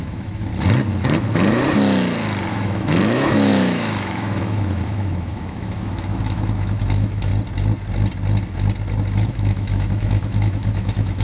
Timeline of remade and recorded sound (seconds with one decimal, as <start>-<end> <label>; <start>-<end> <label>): 0.0-0.5 remade; 0.5-2.5 recorded; 2.5-7.3 remade; 7.3-9.3 recorded; 9.3-11.2 remade